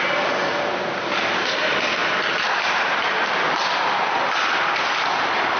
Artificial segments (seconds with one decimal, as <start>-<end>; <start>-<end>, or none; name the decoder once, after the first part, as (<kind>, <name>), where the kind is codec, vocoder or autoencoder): none